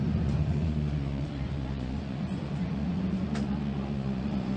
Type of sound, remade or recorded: remade